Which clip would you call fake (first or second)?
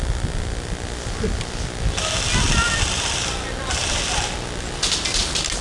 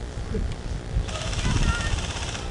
second